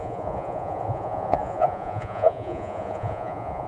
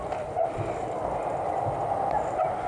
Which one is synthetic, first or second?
first